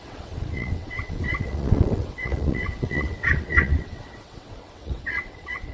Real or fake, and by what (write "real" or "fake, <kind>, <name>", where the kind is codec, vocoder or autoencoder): fake, vocoder, WaveNeXt